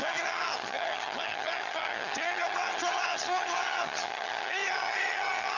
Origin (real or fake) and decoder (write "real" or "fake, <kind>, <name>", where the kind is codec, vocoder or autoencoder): fake, vocoder, HiFi-GAN